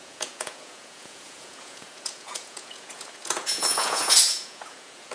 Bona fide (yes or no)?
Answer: no